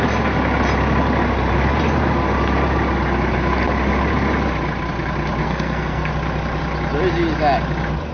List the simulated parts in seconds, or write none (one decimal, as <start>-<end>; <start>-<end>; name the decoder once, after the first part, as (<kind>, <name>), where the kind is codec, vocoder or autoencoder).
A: 5.4-6.1 (codec, SNAC)